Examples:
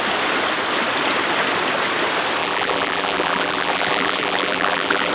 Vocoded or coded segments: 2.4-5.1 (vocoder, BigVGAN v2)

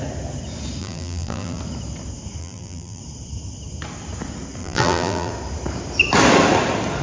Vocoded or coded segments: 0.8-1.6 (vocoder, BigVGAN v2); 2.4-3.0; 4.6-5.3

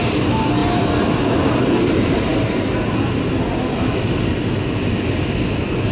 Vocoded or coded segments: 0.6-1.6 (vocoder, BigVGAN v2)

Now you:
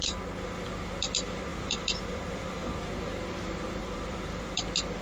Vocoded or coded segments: 1.5-2.7 (vocoder, BigVGAN v2); 3.8-4.6